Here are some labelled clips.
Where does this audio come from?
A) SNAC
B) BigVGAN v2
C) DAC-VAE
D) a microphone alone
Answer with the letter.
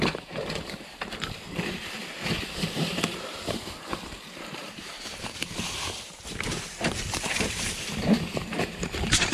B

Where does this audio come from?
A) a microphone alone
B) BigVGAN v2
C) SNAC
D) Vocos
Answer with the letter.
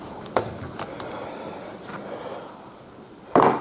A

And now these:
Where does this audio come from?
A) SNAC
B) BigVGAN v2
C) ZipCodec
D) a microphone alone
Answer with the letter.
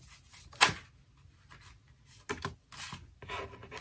D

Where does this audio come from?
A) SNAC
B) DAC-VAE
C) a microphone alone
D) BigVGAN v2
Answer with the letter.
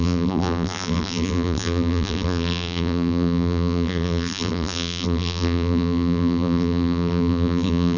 D